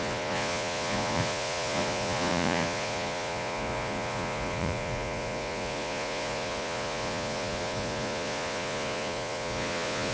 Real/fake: fake